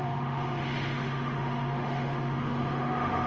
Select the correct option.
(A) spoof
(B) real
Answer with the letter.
A